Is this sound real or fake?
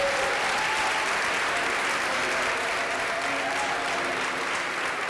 real